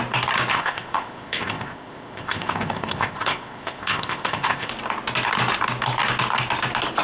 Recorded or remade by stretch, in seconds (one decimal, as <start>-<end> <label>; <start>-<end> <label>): 0.0-0.5 recorded; 0.5-4.7 remade; 4.7-7.0 recorded